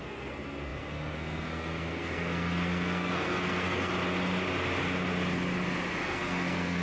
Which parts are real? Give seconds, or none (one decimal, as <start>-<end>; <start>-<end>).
3.9-6.0